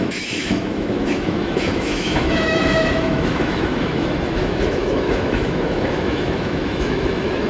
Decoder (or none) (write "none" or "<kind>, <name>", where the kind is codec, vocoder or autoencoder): autoencoder, DAC-VAE